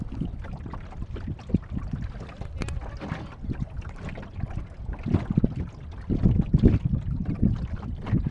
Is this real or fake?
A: real